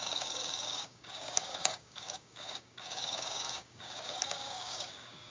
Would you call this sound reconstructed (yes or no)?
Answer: yes